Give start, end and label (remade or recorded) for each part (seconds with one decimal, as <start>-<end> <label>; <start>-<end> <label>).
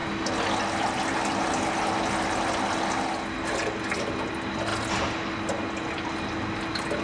0.0-7.0 recorded